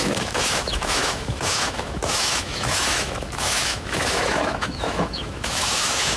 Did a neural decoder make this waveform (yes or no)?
yes